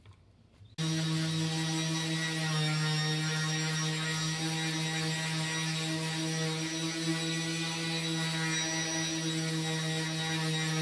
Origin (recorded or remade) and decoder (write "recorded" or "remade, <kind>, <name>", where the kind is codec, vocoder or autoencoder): recorded